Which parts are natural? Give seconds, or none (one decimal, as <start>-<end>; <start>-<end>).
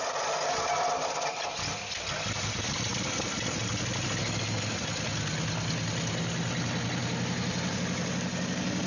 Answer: 0.0-8.9